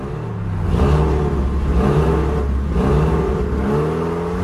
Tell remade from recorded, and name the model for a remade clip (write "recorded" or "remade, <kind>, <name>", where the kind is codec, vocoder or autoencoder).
recorded